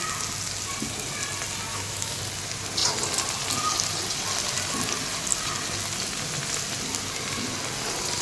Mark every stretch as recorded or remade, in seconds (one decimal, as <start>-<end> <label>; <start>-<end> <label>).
0.0-1.7 recorded; 1.7-2.2 remade; 2.2-8.2 recorded

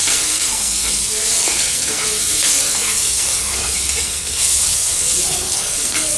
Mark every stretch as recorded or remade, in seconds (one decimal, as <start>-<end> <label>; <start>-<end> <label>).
0.0-6.2 remade

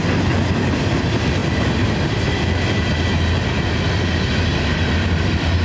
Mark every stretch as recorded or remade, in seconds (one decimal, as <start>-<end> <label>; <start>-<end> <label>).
0.0-5.6 recorded

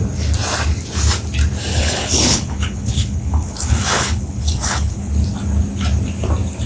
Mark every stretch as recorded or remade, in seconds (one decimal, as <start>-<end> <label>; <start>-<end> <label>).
0.0-1.7 recorded; 1.7-5.1 remade; 5.1-6.7 recorded